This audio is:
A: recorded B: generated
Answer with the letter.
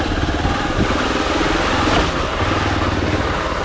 A